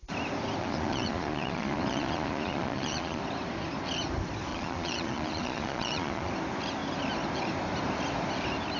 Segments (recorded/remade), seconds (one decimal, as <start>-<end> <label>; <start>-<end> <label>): 0.0-0.6 recorded; 0.6-3.2 remade; 3.2-4.5 recorded; 4.5-6.3 remade; 6.3-8.8 recorded